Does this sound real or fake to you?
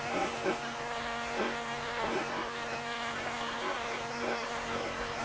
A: fake